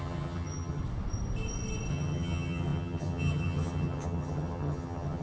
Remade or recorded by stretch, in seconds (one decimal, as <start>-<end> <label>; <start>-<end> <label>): 0.0-0.8 remade; 0.8-1.9 recorded; 1.9-5.2 remade